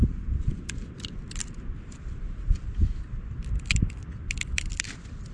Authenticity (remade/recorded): recorded